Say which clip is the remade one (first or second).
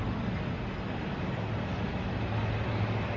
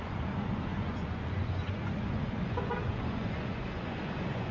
second